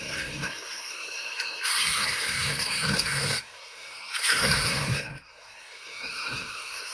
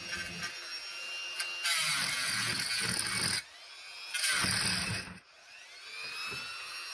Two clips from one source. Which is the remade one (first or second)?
first